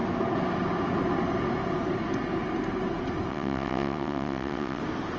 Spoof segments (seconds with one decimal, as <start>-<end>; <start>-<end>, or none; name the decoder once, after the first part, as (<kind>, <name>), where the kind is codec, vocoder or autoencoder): 3.3-4.8 (vocoder, WaveNeXt)